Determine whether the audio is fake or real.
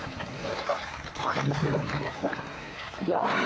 fake